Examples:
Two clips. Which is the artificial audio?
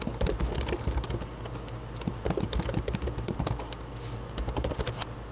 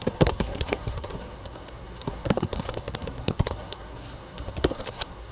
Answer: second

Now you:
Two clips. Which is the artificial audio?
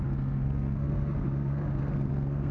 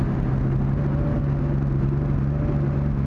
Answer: first